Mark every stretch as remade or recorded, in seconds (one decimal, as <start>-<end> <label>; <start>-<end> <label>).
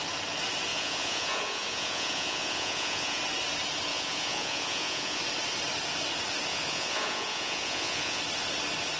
0.0-0.7 recorded; 0.7-3.2 remade; 3.2-3.9 recorded; 3.9-5.2 remade; 5.2-6.5 recorded; 6.5-8.2 remade; 8.2-9.0 recorded